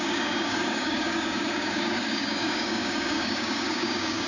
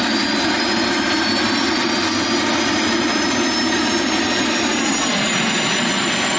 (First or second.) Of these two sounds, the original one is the second